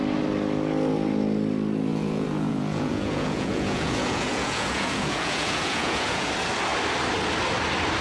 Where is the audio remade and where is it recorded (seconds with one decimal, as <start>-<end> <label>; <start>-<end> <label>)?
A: 0.0-1.9 recorded; 1.9-6.3 remade; 6.3-8.0 recorded